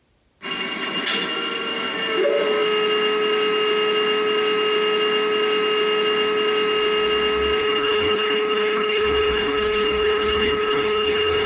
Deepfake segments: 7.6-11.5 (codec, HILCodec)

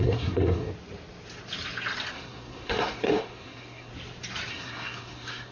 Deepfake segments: 0.0-0.7 (codec, SNAC); 2.1-3.9; 4.5-5.5

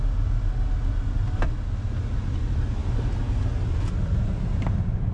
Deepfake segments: none

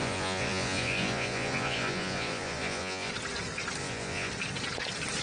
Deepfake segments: 0.0-3.1 (vocoder, Vocos); 3.8-4.3